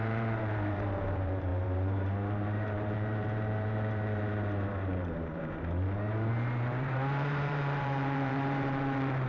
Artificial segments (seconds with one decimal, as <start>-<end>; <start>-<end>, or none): 0.0-9.3